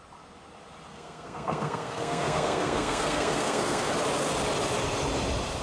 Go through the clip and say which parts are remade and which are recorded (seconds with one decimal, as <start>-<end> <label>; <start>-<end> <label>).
0.0-0.9 recorded; 0.9-3.9 remade; 3.9-5.6 recorded